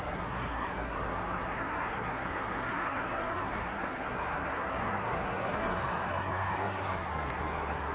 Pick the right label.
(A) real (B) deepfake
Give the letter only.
B